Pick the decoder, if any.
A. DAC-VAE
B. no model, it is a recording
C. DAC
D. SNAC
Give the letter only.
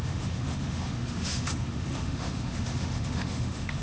A